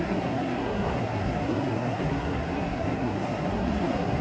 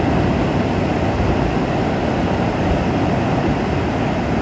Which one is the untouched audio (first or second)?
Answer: second